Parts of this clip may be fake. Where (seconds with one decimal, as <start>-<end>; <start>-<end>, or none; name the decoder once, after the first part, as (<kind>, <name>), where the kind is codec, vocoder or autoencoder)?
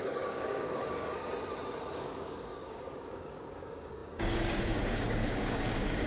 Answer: 0.0-1.2 (codec, DAC); 1.9-6.1